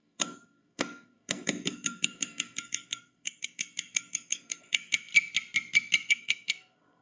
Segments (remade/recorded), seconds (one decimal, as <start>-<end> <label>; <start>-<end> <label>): 0.0-5.1 remade; 5.1-6.1 recorded; 6.1-7.0 remade

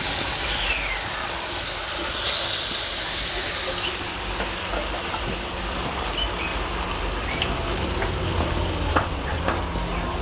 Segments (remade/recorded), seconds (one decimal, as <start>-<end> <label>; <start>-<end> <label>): 0.0-8.9 recorded; 8.9-9.4 remade; 9.4-10.2 recorded

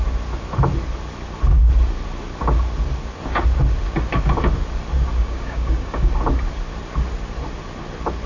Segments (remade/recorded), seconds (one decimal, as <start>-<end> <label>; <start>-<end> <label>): 0.0-5.2 recorded; 5.2-6.1 remade; 6.1-8.3 recorded

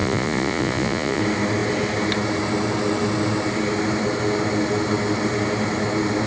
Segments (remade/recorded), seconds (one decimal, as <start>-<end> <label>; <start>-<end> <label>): 0.0-1.2 remade; 1.2-6.3 recorded

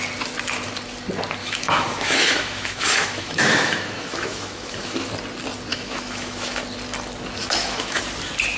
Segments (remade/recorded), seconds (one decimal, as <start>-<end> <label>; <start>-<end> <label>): 0.0-1.4 recorded; 1.4-5.1 remade; 5.1-5.7 recorded; 5.7-6.6 remade; 6.6-7.4 recorded; 7.4-8.0 remade; 8.0-8.6 recorded

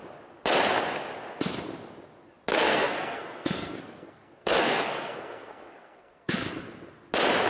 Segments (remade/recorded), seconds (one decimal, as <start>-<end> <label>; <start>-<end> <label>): 0.0-2.5 recorded; 2.5-6.6 remade; 6.6-7.5 recorded